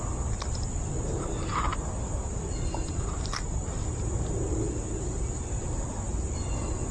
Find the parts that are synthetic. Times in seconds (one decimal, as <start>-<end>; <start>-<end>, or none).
none